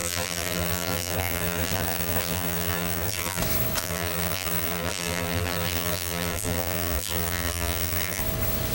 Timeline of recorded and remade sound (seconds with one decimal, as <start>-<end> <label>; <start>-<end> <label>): 0.0-3.4 remade; 3.4-3.8 recorded; 3.8-8.2 remade; 8.2-8.7 recorded